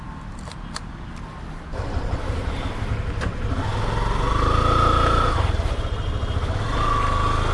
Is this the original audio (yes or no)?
yes